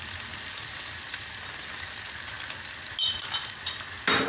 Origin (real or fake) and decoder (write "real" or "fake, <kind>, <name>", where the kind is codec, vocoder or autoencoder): real